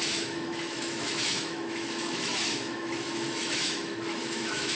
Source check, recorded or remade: remade